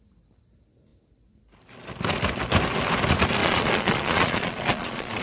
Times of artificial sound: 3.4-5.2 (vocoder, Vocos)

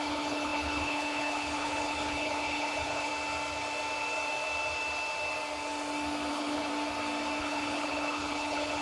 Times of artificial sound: 0.0-3.1 (codec, HILCodec); 6.3-6.7; 7.4-8.8

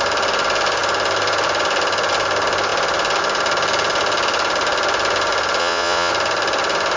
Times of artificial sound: 5.6-6.1 (vocoder, Vocos)

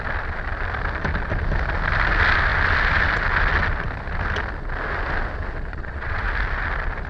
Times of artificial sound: 5.7-6.3 (vocoder, Vocos)